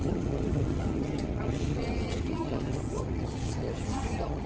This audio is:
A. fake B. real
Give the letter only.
A